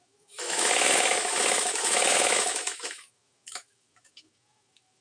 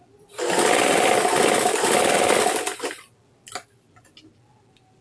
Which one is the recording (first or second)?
second